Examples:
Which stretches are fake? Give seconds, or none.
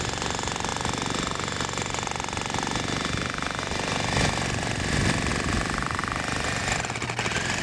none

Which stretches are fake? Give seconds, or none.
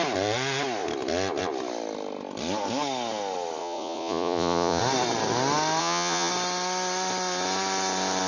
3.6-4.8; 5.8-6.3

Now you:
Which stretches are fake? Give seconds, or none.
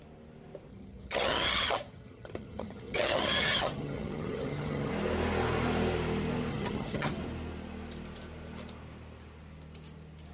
0.7-4.9; 6.5-7.2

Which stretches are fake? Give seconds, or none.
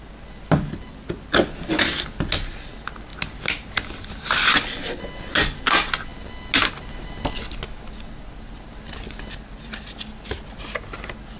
none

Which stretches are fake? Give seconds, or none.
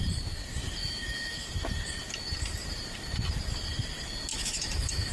0.8-1.5; 4.3-5.1